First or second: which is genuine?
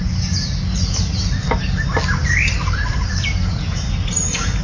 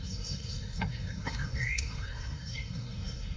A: first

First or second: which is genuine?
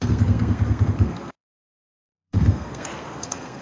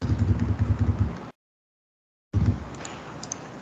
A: second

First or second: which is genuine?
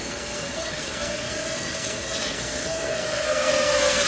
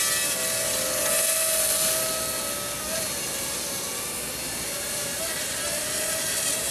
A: second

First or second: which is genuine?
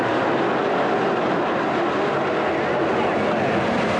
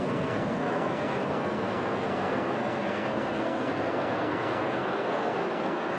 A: first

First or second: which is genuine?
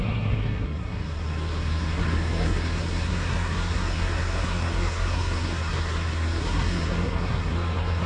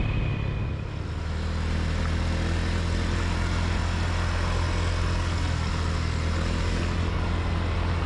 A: second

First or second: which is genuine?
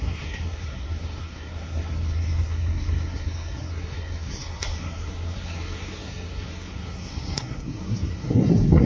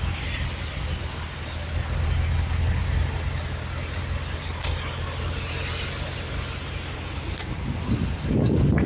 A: second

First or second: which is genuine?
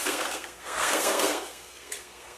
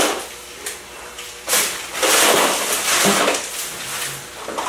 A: second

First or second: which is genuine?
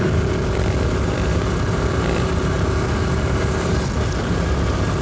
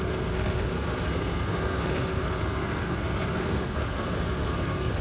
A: first